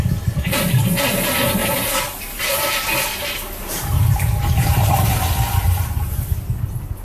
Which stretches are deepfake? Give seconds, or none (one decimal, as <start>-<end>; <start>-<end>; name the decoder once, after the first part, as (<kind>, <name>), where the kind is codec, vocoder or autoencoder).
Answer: 1.6-2.5 (vocoder, BigVGAN v2); 3.1-6.6